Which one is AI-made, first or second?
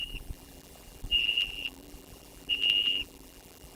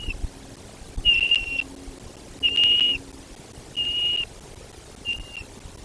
first